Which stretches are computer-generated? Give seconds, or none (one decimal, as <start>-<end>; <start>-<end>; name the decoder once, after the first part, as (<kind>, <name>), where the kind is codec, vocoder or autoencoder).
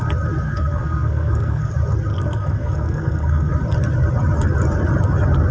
0.5-1.7 (codec, SNAC); 2.1-3.5